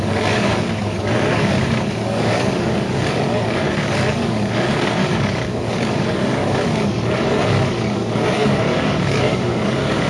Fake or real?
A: fake